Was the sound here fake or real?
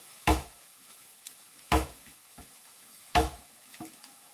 fake